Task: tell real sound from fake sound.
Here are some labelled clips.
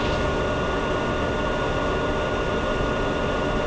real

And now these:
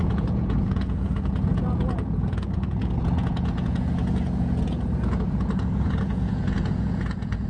fake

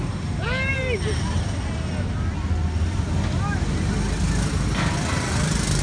real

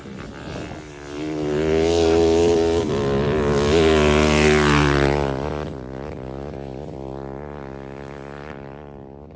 real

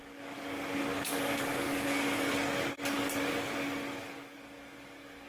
fake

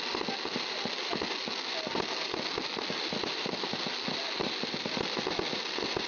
real